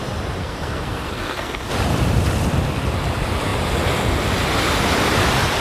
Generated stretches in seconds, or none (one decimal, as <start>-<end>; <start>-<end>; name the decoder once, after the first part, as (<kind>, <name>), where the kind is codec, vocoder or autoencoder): 0.4-1.7 (codec, SNAC)